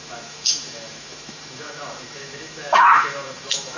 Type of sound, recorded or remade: remade